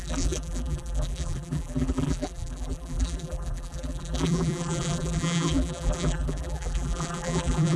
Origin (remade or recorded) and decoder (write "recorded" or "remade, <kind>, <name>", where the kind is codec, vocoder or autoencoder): remade, vocoder, BigVGAN v2